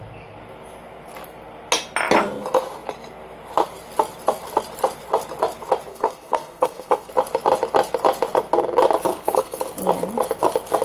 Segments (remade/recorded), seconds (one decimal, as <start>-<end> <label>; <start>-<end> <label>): 0.0-5.9 recorded; 5.9-7.1 remade; 7.1-9.1 recorded; 9.1-9.6 remade; 9.6-10.8 recorded